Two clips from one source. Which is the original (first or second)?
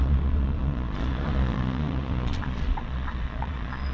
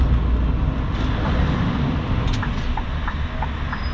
second